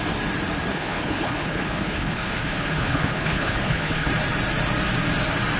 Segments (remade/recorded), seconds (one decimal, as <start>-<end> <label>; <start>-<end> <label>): 0.0-0.7 recorded; 0.7-4.1 remade; 4.1-5.6 recorded